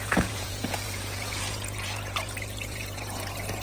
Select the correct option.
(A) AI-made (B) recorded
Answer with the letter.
A